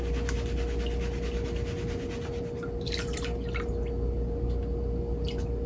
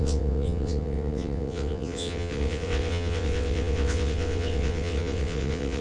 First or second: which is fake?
second